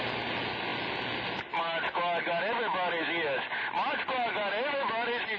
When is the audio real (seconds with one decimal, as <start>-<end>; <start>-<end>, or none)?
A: 0.0-5.4